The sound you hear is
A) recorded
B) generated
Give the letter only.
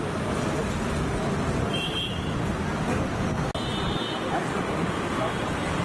A